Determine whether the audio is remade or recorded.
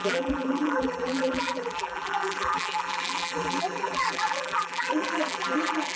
remade